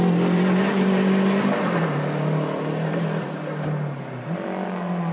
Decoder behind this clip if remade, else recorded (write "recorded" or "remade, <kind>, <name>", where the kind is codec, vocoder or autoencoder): recorded